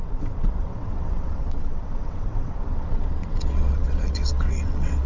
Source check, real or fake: fake